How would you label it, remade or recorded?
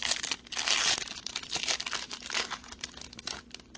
recorded